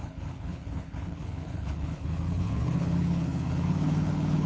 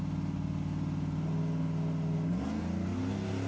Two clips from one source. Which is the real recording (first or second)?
second